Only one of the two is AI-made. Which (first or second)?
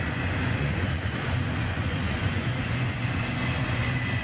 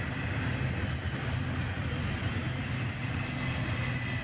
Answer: first